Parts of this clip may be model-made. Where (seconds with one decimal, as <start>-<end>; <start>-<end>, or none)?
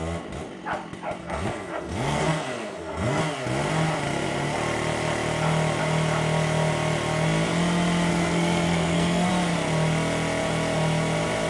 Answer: 1.2-3.2; 8.1-9.3